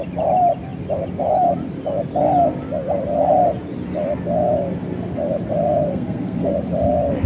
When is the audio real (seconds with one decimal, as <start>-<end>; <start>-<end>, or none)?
0.0-5.9; 6.5-7.3